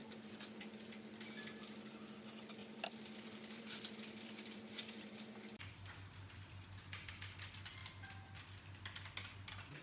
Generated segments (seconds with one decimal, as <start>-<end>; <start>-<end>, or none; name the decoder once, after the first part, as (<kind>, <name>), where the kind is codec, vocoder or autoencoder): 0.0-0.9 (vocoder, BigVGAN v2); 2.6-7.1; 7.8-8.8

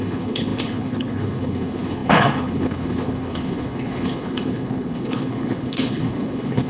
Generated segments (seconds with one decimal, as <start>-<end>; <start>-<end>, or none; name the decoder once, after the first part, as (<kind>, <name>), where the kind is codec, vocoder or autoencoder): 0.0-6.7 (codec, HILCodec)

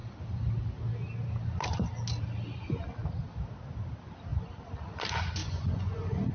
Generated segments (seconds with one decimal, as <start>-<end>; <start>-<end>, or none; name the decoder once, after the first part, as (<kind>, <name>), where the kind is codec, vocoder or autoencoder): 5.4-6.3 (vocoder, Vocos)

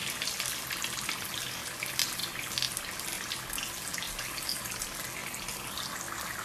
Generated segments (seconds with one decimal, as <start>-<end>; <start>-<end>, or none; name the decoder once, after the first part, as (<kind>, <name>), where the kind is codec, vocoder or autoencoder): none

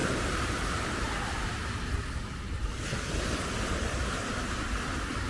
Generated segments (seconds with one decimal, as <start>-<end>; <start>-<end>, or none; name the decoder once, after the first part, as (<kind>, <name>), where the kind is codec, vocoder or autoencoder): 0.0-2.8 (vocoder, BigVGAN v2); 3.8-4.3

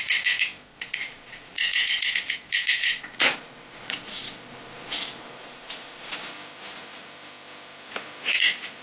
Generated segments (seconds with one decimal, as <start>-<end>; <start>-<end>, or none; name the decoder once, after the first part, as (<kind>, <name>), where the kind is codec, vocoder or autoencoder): 0.7-2.3 (vocoder, Vocos); 2.8-6.3